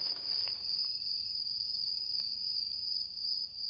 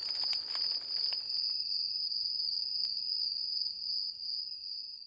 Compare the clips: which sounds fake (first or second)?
first